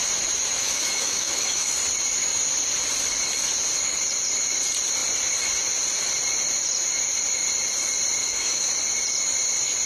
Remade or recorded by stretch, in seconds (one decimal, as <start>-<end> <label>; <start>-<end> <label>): 0.0-0.6 recorded; 0.6-1.7 remade; 1.7-8.2 recorded; 8.2-8.7 remade; 8.7-9.9 recorded